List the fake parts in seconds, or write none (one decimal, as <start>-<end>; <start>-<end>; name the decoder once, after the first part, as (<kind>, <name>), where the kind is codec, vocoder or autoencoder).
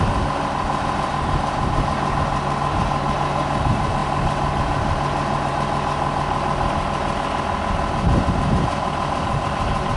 none